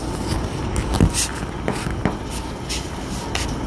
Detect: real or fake real